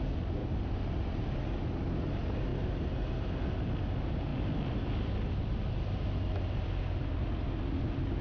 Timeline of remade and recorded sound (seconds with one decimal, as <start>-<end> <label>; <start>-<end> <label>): 0.0-0.4 recorded; 0.4-1.3 remade; 1.3-2.5 recorded; 2.5-3.4 remade; 3.4-8.2 recorded